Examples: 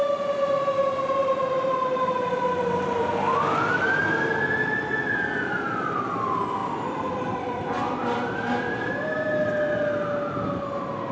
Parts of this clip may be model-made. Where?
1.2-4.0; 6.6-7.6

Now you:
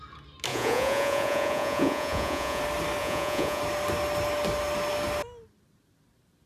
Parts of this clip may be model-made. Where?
0.5-2.6; 3.0-3.6